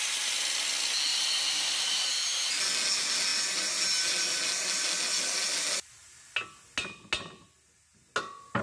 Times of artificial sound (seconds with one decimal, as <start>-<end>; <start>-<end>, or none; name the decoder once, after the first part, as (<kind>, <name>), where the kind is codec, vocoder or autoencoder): 1.1-2.5 (vocoder, BigVGAN v2)

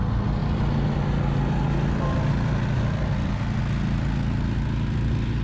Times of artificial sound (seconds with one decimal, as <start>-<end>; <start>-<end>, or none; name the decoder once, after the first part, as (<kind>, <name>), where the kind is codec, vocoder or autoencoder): 0.4-3.6 (vocoder, BigVGAN v2)

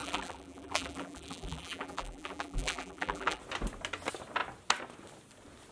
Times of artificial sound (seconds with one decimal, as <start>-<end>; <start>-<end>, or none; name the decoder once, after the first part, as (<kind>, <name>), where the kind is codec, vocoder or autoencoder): 0.0-3.4 (vocoder, BigVGAN v2)

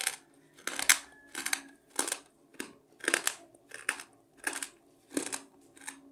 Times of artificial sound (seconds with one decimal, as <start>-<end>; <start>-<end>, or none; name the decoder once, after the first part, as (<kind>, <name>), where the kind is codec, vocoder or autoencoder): 2.5-6.1 (vocoder, BigVGAN v2)